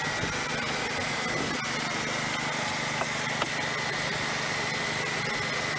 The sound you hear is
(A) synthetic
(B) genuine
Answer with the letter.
B